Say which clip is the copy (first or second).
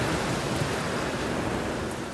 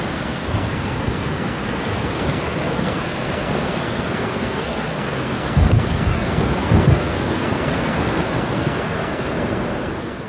second